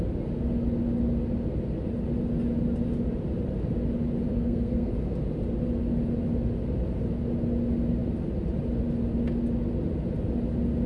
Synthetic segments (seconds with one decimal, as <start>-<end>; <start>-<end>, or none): 4.3-4.9